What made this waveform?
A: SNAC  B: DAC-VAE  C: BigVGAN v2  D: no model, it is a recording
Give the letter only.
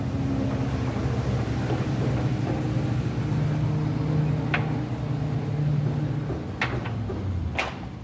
D